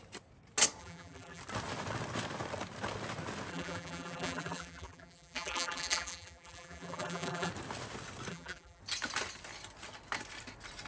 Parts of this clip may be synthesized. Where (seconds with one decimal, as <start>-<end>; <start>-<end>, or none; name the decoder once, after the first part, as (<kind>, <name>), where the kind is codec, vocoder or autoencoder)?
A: 0.8-1.4 (vocoder, BigVGAN v2); 3.5-7.5; 8.3-8.8